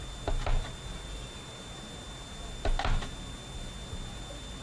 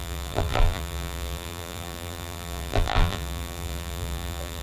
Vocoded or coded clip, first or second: second